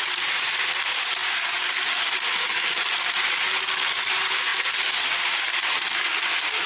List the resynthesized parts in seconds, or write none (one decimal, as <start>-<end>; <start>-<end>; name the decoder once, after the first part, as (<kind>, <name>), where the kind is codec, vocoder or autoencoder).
none